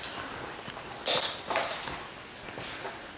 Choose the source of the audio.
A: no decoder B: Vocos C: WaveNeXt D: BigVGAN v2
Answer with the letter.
A